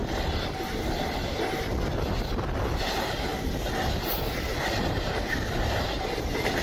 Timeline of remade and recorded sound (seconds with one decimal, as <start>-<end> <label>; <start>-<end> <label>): 0.0-6.6 recorded